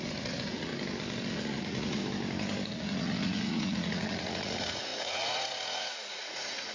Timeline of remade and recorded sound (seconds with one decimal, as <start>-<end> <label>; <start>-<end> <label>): 0.0-0.7 remade; 0.7-1.3 recorded; 1.3-2.0 remade; 2.0-2.7 recorded; 2.7-6.7 remade